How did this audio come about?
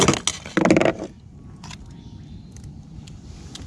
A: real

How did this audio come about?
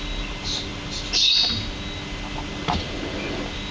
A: real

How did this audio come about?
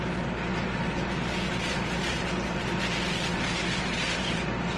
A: real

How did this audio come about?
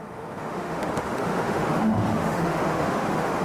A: fake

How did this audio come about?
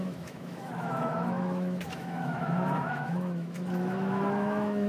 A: fake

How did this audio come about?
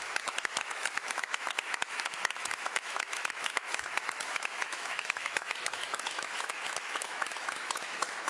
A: fake